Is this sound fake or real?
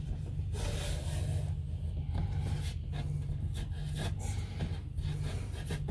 real